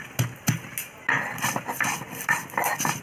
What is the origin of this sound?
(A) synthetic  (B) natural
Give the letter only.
B